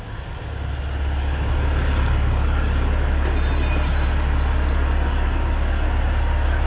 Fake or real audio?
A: real